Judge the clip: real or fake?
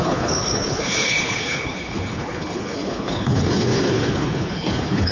fake